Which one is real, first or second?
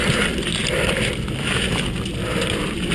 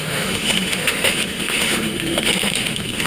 first